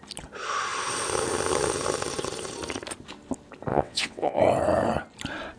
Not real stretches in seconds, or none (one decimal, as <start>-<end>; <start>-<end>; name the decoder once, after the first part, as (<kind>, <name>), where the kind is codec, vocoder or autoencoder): 3.7-4.4 (vocoder, WaveNeXt)